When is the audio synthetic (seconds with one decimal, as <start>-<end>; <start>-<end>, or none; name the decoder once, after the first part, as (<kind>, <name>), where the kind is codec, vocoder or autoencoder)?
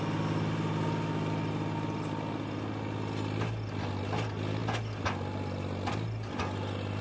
none